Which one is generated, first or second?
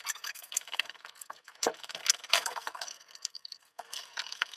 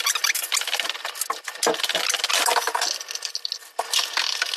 first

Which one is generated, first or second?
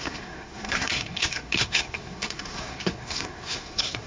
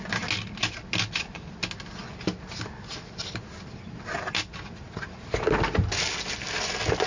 first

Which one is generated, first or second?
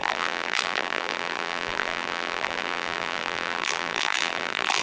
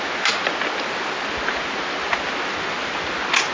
first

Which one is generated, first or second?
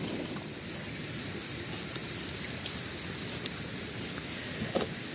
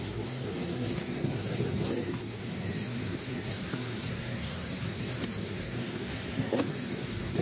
second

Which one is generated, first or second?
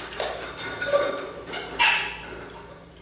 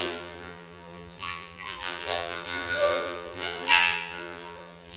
second